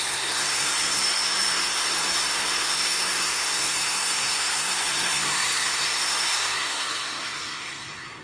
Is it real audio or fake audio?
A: fake